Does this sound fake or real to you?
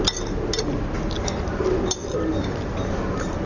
real